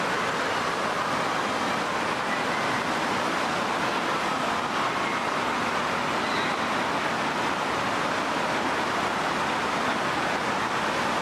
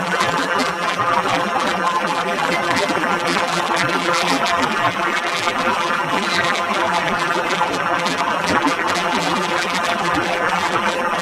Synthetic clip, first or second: second